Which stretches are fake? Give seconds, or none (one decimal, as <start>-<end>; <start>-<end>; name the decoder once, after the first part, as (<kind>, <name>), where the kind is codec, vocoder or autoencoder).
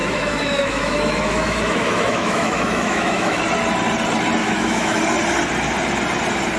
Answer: 0.0-3.4 (autoencoder, DAC-VAE); 4.4-5.0